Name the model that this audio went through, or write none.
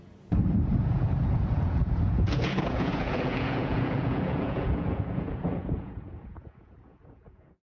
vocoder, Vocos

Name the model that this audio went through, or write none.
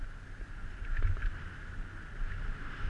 none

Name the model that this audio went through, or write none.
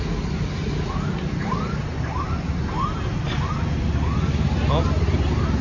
none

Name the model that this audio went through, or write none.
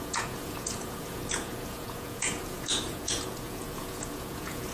vocoder, Vocos